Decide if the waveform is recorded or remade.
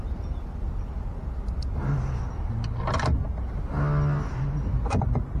recorded